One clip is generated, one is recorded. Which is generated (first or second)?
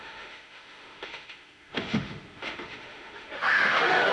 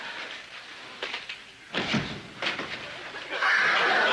first